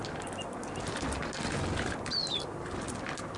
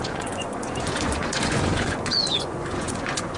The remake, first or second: second